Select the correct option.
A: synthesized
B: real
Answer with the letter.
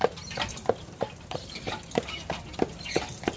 B